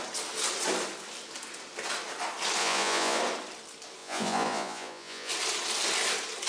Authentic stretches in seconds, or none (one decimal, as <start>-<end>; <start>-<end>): 0.0-2.6; 3.2-4.0; 5.3-6.5